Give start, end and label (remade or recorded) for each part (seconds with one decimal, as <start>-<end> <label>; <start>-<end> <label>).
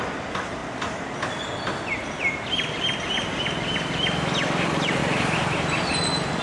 0.0-6.4 recorded